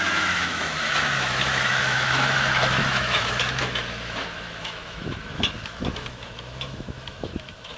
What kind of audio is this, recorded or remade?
remade